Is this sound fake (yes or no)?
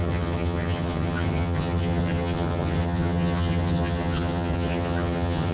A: yes